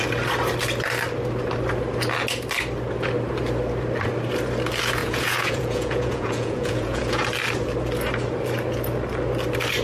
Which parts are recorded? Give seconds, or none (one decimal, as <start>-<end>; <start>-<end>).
0.0-5.0; 7.2-9.8